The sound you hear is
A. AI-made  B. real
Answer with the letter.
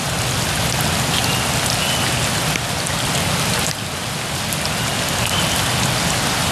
B